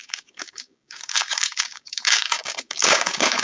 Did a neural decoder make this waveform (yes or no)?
yes